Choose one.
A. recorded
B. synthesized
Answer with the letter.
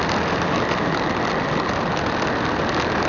A